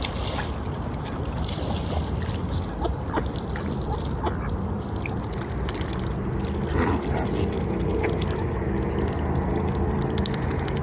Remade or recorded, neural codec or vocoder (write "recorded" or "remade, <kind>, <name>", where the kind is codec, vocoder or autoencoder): recorded